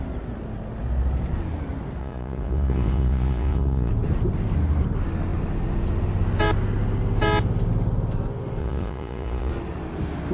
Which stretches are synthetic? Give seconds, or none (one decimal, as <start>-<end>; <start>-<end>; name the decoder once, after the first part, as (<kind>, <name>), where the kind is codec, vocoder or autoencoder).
2.0-3.9 (vocoder, Vocos); 8.6-9.5